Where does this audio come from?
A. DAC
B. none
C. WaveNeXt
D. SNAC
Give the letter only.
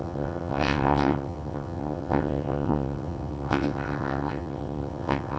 C